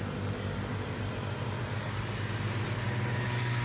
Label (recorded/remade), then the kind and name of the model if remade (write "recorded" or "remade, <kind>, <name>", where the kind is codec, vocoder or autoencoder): recorded